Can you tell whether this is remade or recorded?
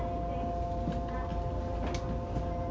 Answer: recorded